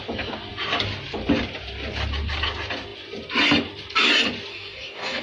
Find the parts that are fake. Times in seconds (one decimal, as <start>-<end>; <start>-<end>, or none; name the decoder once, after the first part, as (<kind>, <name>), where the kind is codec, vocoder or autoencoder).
4.5-5.2 (codec, DAC)